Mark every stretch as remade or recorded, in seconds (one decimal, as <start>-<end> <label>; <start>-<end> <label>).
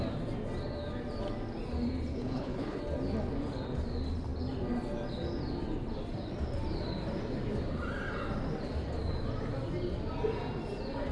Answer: 0.0-2.1 recorded; 2.1-2.8 remade; 2.8-11.1 recorded